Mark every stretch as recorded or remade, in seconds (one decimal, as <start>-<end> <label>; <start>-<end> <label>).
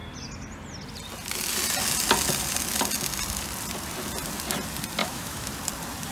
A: 0.0-5.0 recorded; 5.0-5.5 remade; 5.5-6.1 recorded